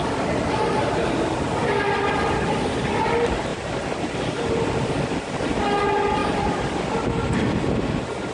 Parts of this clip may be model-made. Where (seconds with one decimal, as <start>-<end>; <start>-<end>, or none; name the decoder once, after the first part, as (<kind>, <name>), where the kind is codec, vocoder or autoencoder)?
3.5-4.9 (vocoder, BigVGAN v2); 6.2-6.7